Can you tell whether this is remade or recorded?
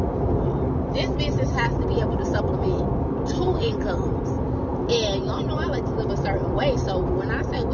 recorded